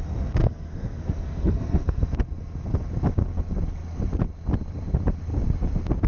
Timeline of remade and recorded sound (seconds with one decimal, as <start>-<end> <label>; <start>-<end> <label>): 0.0-0.4 recorded; 0.4-2.0 remade; 2.0-6.1 recorded